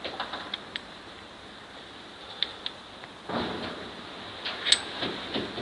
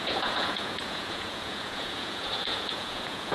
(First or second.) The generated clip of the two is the second